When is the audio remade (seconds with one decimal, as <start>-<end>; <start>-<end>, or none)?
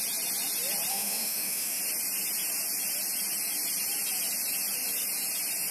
0.9-1.8